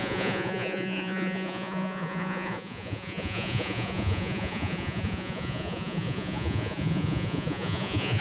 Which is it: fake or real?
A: fake